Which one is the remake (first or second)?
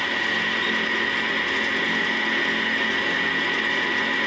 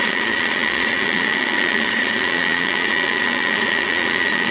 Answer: second